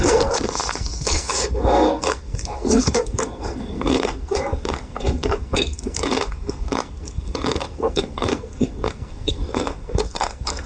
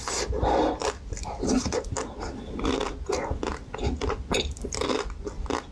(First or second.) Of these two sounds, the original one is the second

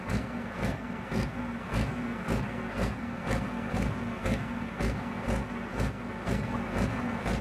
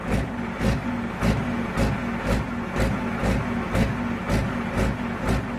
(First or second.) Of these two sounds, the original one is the second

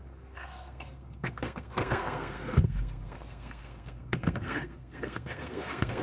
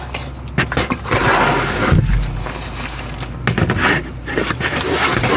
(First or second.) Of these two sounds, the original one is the second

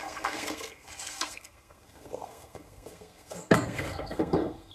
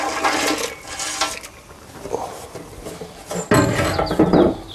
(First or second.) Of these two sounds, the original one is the second